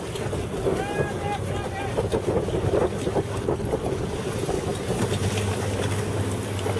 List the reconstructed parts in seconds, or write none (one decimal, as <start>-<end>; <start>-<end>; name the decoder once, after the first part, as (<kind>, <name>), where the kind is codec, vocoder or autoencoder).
none

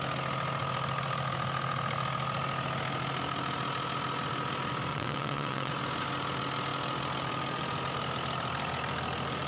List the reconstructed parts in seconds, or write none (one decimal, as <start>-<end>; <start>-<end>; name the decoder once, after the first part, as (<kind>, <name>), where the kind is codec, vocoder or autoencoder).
4.9-5.7 (vocoder, WaveNeXt)

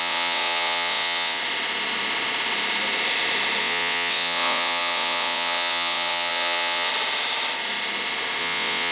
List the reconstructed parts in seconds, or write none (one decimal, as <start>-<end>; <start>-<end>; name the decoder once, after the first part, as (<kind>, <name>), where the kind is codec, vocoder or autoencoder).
0.0-1.4 (vocoder, WaveNeXt); 3.6-6.9; 8.4-8.9

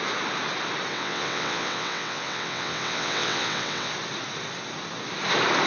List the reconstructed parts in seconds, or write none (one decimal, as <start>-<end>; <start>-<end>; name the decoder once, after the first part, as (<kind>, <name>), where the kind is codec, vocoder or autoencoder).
0.9-3.9 (vocoder, WaveNeXt)

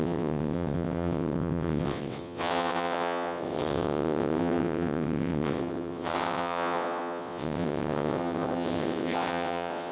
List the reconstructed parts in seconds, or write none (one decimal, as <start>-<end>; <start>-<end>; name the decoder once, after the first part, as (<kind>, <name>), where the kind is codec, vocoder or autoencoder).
0.0-9.9 (vocoder, WaveNeXt)

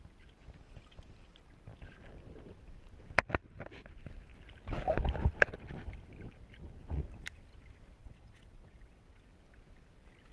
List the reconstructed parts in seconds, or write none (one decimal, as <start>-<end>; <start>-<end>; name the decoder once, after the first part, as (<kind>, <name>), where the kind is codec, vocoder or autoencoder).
8.0-9.2 (vocoder, WaveNeXt)

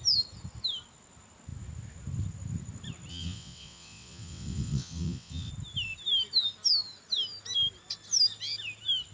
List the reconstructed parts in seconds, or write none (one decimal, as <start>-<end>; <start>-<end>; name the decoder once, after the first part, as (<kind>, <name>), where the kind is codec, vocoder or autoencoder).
3.1-5.5 (vocoder, WaveNeXt)

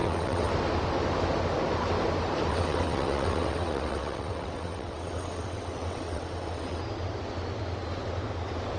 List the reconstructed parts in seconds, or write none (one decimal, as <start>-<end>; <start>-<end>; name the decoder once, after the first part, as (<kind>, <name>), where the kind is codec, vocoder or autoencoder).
0.0-0.5 (vocoder, WaveNeXt); 2.5-6.8